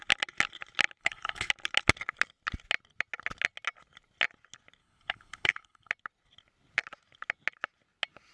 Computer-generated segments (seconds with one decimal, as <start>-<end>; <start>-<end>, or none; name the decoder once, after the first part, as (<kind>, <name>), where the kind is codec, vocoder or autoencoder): 1.0-1.5 (codec, HILCodec); 4.8-5.9